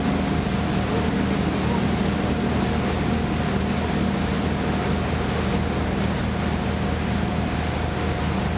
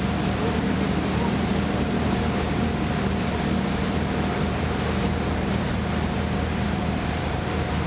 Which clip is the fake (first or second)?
second